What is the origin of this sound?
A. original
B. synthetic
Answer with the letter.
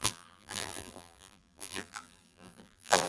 B